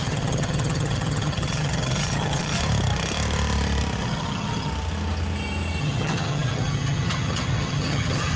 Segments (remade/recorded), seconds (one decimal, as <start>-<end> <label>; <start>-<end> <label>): 0.0-2.6 remade; 2.6-4.0 recorded; 4.0-4.7 remade; 4.7-5.8 recorded; 5.8-8.4 remade